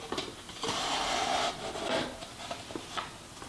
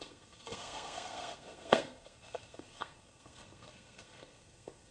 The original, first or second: first